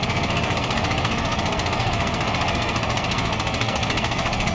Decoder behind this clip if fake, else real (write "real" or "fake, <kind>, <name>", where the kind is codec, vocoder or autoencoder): fake, codec, SNAC